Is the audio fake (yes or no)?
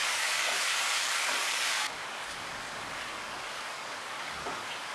yes